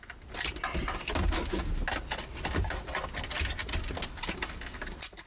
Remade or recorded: recorded